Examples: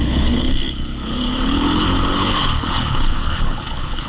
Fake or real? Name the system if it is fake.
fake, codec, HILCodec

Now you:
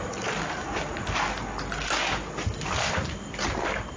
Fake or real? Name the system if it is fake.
real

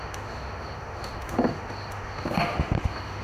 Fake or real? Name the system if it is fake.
fake, autoencoder, DAC-VAE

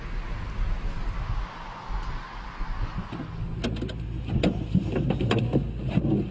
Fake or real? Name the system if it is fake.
real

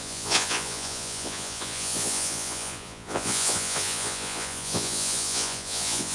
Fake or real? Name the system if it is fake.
fake, vocoder, Vocos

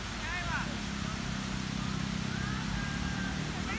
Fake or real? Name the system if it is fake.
real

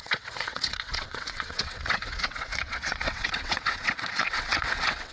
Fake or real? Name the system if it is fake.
fake, vocoder, WaveNeXt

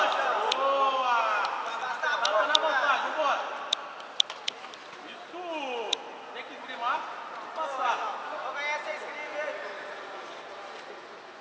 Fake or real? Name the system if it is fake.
real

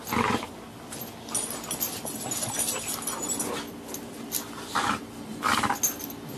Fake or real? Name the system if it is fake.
real